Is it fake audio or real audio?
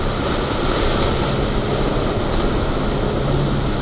real